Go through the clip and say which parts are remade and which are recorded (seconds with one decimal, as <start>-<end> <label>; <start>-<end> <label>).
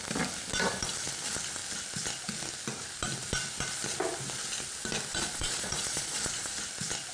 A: 0.0-5.1 recorded; 5.1-6.6 remade; 6.6-7.1 recorded